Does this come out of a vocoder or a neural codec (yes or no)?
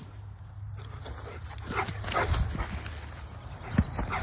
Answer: no